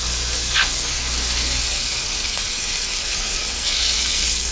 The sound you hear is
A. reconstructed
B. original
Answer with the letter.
A